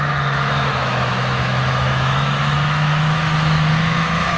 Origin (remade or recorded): remade